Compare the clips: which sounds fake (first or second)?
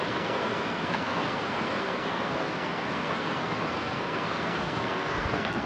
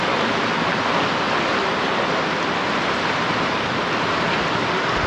first